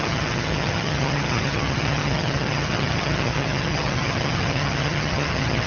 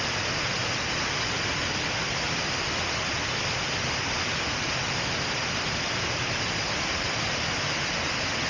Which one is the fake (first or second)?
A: first